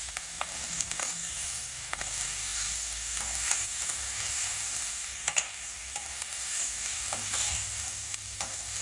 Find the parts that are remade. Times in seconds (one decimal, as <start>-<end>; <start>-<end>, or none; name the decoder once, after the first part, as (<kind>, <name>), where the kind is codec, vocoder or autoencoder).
0.0-8.8 (codec, DAC)